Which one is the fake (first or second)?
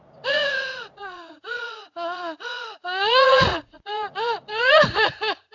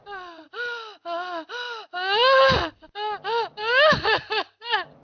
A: first